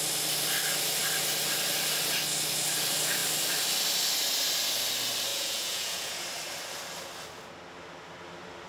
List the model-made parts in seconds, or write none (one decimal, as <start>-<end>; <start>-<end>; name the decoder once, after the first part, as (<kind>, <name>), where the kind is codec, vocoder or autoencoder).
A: 5.3-6.1 (vocoder, Vocos)